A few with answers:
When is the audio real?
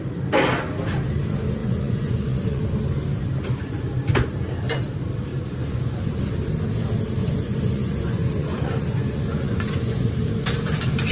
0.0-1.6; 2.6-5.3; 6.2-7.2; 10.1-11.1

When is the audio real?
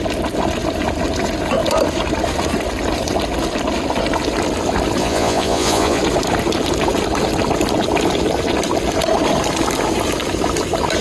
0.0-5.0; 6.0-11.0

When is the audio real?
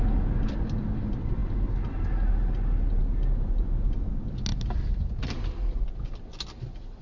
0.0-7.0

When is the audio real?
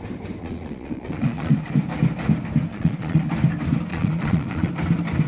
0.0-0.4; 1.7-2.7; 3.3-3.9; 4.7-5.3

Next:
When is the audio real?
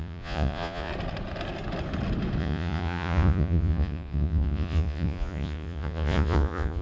0.9-2.4